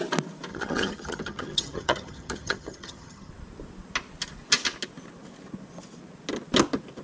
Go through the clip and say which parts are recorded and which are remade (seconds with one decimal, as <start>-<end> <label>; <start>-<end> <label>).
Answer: 0.0-0.5 recorded; 0.5-3.3 remade; 3.3-7.0 recorded